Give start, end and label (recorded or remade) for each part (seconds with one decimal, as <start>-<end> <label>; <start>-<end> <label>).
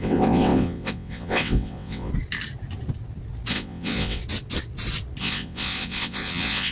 0.0-2.1 remade; 2.1-3.5 recorded; 3.5-4.2 remade; 4.2-5.2 recorded; 5.2-6.7 remade